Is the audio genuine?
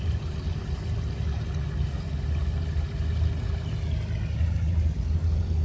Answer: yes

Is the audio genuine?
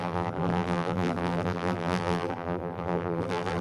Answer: no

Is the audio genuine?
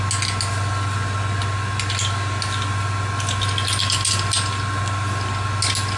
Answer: yes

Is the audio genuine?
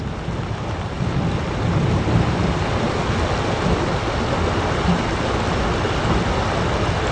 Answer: yes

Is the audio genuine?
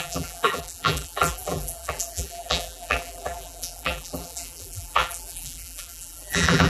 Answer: no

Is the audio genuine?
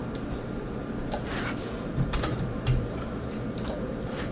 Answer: no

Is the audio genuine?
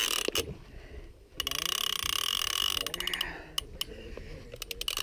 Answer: yes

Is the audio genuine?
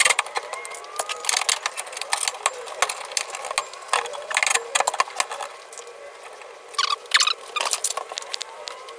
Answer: yes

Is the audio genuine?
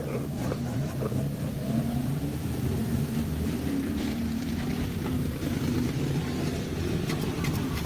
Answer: no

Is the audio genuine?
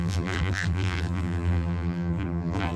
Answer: no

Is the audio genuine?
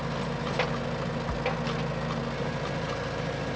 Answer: yes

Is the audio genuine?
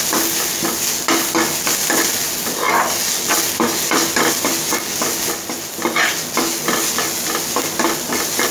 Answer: yes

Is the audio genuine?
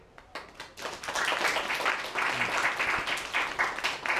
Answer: yes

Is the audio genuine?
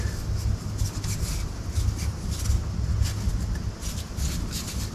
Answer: yes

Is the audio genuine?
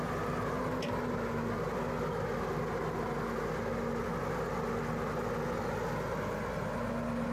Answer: yes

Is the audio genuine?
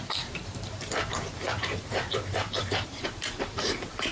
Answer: no